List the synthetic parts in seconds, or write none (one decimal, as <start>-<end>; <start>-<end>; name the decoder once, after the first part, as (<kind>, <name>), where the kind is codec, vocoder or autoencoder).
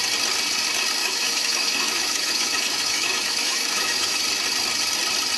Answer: 1.0-4.2 (autoencoder, DAC-VAE)